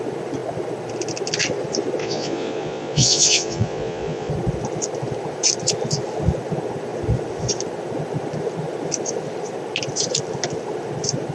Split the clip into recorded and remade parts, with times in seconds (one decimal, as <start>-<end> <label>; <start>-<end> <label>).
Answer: 0.0-2.0 recorded; 2.0-4.3 remade; 4.3-11.3 recorded